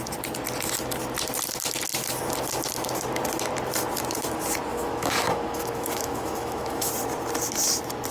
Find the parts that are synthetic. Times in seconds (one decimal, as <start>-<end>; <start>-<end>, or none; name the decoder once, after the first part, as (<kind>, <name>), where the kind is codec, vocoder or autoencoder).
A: 4.7-6.9 (autoencoder, DAC-VAE)